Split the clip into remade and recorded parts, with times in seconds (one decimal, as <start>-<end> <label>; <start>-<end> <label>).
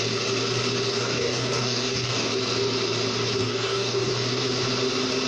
0.0-0.9 recorded; 0.9-2.3 remade; 2.3-3.4 recorded; 3.4-4.1 remade; 4.1-5.3 recorded